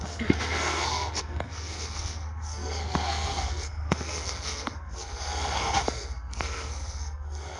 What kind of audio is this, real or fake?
fake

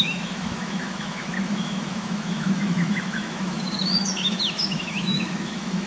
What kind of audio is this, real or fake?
fake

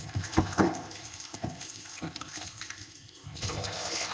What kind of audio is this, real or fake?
fake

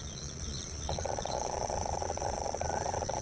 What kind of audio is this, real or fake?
fake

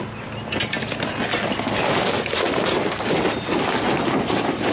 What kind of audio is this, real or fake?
real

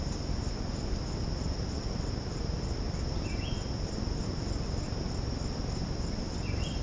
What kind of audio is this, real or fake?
real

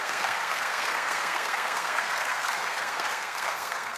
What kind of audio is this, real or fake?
fake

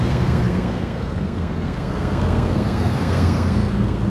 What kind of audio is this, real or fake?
fake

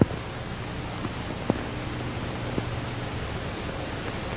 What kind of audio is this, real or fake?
real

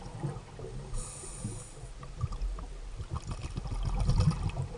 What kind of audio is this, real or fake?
real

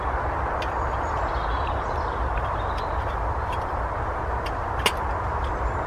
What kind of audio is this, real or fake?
real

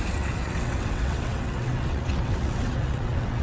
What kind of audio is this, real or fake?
fake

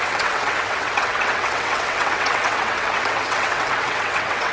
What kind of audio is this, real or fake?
fake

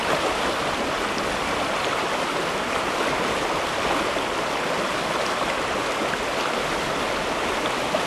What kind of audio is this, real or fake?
real